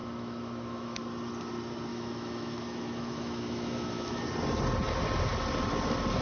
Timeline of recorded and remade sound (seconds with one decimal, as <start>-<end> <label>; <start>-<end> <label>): 0.0-1.0 remade; 1.0-1.9 recorded; 1.9-4.2 remade; 4.2-6.2 recorded

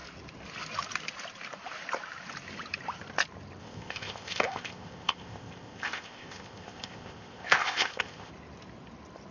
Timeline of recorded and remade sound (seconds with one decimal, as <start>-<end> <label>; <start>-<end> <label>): 0.0-3.6 recorded; 3.6-8.3 remade; 8.3-9.3 recorded

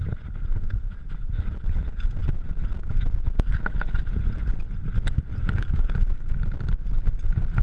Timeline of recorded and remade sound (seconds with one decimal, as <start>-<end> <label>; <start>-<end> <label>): 0.0-5.3 recorded; 5.3-5.9 remade; 5.9-7.6 recorded

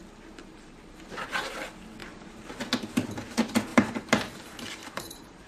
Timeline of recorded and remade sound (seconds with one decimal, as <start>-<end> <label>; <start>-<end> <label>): 0.0-0.4 recorded; 0.4-1.0 remade; 1.0-2.0 recorded; 2.0-2.6 remade; 2.6-3.7 recorded; 3.7-5.5 remade

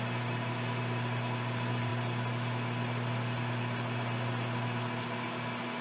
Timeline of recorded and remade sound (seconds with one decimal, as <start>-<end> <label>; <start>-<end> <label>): 0.0-5.8 recorded

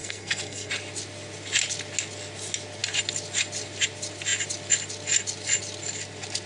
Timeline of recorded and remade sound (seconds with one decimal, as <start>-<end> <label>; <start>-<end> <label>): 0.0-0.7 remade; 0.7-6.5 recorded